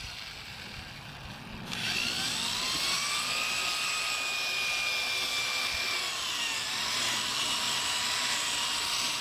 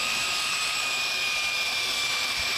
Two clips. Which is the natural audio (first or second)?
first